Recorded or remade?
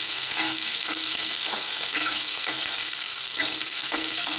remade